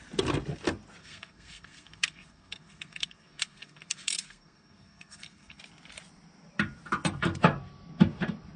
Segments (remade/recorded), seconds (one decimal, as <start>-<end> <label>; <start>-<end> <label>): 0.0-1.0 recorded; 1.0-5.6 remade; 5.6-8.6 recorded